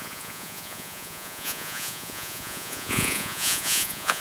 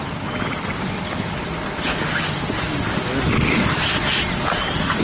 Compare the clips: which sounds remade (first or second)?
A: first